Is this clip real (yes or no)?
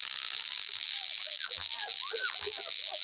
no